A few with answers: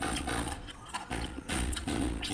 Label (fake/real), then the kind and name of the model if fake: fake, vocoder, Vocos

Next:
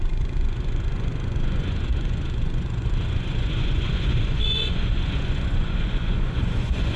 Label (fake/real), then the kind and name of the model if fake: fake, vocoder, Vocos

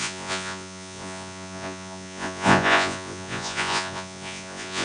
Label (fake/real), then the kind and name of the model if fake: fake, vocoder, Vocos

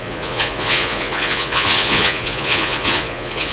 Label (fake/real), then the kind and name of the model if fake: fake, vocoder, Vocos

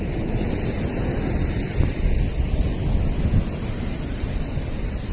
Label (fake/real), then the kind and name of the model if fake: real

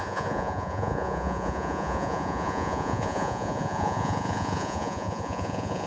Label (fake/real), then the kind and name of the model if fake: fake, vocoder, Vocos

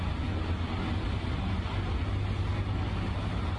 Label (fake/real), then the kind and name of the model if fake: real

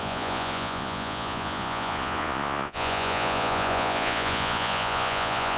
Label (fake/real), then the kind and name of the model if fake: fake, vocoder, Vocos